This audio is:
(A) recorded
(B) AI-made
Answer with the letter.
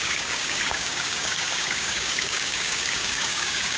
B